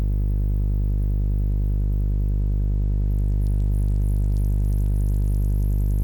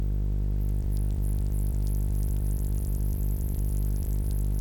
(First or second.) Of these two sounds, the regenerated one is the second